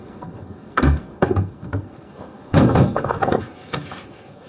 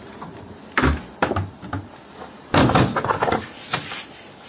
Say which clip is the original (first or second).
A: second